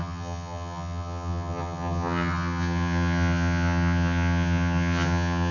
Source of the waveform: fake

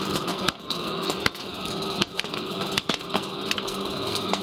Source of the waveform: fake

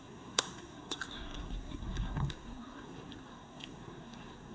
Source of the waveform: fake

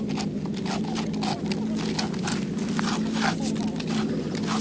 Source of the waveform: real